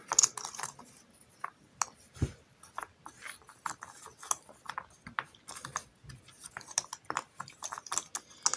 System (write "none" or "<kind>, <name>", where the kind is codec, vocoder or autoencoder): none